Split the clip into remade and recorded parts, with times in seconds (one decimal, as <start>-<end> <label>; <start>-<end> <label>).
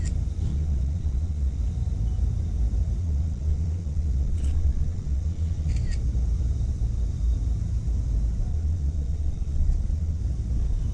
0.0-0.5 recorded; 0.5-1.6 remade; 1.6-3.0 recorded; 3.0-5.7 remade; 5.7-8.5 recorded; 8.5-10.2 remade; 10.2-10.9 recorded